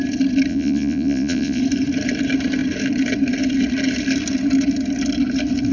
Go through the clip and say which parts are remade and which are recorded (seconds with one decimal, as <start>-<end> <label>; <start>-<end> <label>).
0.0-0.5 recorded; 0.5-1.6 remade; 1.6-5.7 recorded